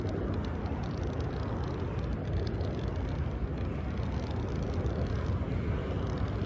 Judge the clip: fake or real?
real